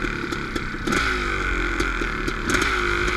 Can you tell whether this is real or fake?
real